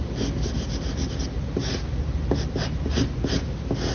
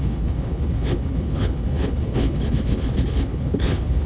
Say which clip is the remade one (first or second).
second